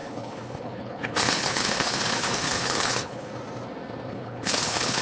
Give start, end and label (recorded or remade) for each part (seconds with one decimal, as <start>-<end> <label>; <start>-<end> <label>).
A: 0.0-3.3 remade; 3.3-4.1 recorded; 4.1-5.0 remade